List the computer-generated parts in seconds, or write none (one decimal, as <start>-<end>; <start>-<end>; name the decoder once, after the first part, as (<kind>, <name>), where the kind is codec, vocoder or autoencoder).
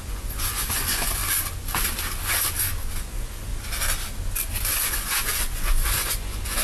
0.0-1.2 (vocoder, Vocos); 3.0-3.5; 4.6-6.6